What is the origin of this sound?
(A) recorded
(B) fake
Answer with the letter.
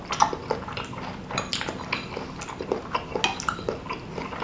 A